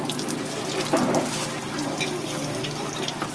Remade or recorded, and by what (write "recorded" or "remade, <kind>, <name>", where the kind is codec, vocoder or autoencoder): recorded